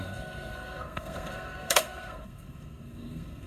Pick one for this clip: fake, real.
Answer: fake